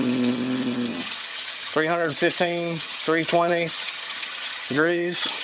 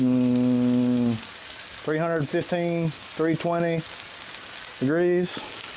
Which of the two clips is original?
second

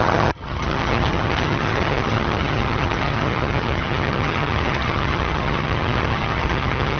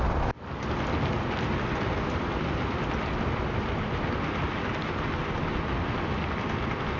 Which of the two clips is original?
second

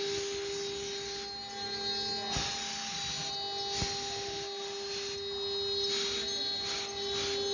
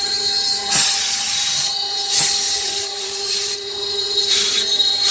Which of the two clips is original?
first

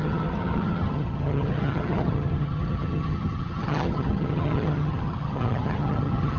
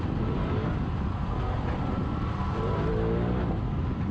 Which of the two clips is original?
second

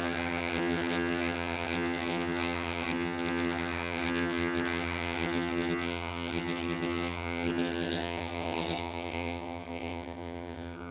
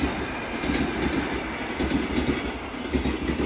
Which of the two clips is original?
second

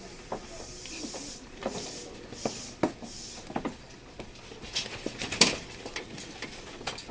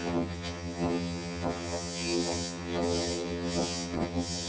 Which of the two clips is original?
first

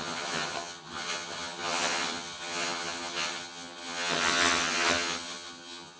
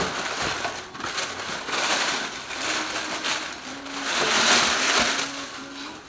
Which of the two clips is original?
second